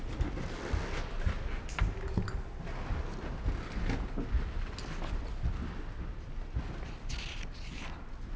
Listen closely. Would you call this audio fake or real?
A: real